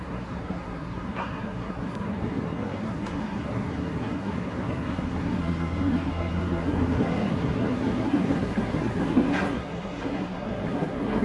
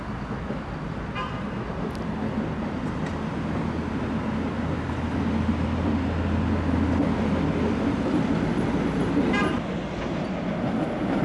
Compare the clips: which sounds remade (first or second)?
first